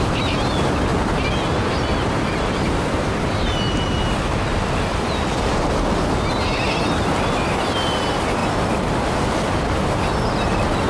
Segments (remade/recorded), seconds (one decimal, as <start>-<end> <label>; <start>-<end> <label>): 0.0-10.9 recorded